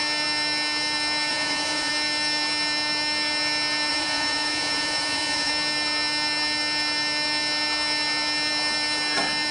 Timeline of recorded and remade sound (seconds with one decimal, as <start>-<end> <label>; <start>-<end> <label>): 0.0-1.3 recorded; 1.3-1.9 remade; 1.9-3.9 recorded; 3.9-5.5 remade; 5.5-9.5 recorded